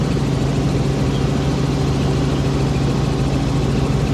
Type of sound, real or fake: real